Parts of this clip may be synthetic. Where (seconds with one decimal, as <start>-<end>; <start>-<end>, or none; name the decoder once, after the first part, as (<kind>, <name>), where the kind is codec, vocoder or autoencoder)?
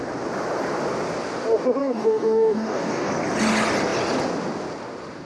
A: 1.8-3.1 (codec, DAC)